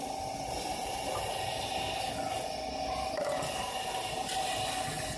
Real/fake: real